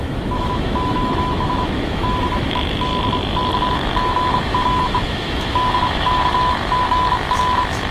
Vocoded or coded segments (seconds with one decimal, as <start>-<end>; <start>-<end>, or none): 0.0-2.9; 3.7-7.9

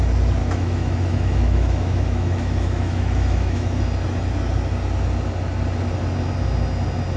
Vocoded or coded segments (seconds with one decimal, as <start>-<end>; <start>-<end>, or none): 0.4-3.8

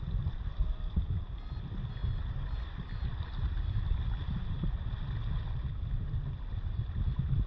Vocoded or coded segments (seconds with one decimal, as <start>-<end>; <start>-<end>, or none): none